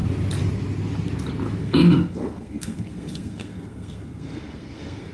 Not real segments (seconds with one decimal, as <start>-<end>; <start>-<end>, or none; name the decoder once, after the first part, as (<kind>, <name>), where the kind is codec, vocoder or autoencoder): 1.6-5.1 (codec, SNAC)